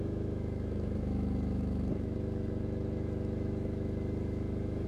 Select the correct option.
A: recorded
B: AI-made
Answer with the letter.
B